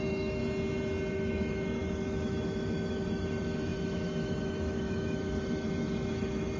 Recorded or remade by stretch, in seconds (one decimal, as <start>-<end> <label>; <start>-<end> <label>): 0.0-0.4 remade; 0.4-1.1 recorded; 1.1-6.6 remade